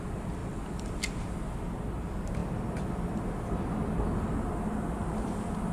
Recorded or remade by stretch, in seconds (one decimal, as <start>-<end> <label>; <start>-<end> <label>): 0.0-0.4 recorded; 0.4-1.3 remade; 1.3-2.4 recorded; 2.4-3.2 remade; 3.2-5.7 recorded